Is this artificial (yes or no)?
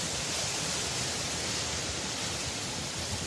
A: no